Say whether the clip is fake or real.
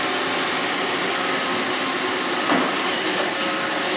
real